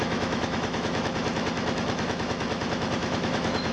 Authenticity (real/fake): fake